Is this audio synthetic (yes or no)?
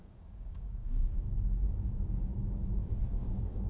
yes